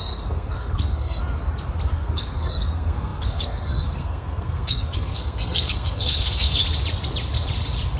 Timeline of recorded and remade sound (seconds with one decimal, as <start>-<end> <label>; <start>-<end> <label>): 0.0-1.2 remade; 1.2-1.9 recorded; 1.9-6.6 remade; 6.6-8.0 recorded